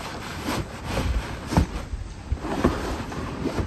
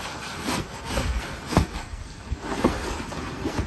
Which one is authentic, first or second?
first